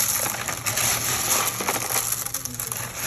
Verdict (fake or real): real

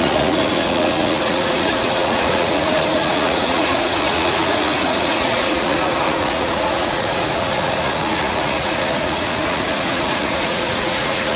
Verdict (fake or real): fake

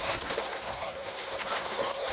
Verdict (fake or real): fake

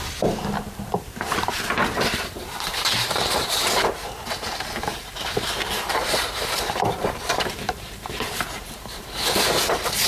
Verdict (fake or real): fake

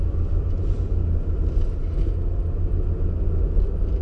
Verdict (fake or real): real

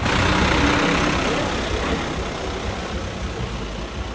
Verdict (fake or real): real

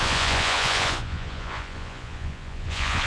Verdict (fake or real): fake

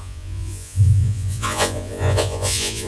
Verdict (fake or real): fake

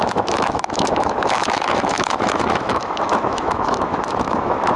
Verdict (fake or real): fake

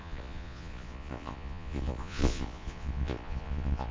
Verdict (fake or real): fake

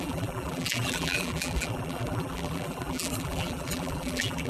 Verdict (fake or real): fake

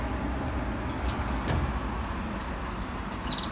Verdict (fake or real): real